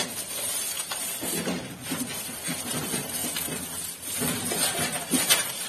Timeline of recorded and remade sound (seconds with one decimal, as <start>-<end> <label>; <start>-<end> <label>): 0.0-3.2 remade; 3.2-5.0 recorded; 5.0-5.7 remade